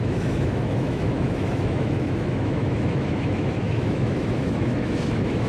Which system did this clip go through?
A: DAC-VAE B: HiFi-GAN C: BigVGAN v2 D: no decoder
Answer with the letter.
A